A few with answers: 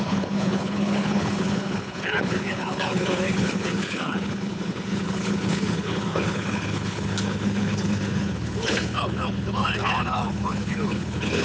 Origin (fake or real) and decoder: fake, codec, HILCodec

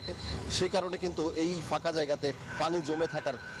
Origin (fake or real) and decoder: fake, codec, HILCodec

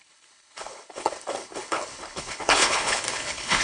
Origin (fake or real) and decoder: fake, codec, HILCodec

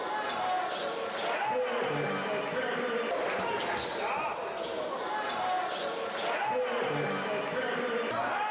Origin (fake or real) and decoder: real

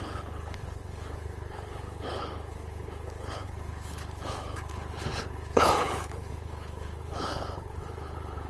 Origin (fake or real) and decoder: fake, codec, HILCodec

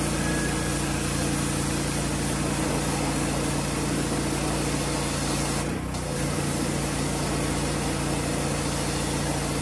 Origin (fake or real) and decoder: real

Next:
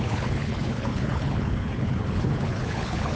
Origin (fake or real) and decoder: fake, codec, HILCodec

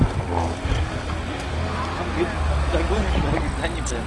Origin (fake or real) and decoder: real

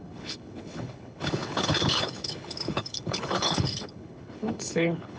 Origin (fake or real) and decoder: fake, codec, HILCodec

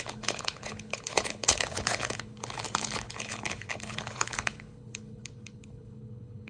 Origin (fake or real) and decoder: fake, codec, HILCodec